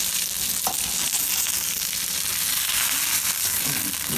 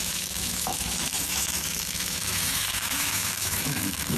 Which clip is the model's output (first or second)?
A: second